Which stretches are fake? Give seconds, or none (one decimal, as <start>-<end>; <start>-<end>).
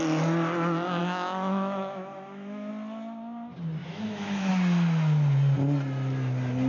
1.0-2.7; 3.8-4.5